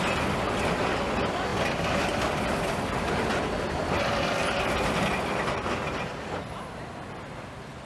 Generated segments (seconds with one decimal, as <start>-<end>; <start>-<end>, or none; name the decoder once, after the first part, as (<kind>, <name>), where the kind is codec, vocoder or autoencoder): none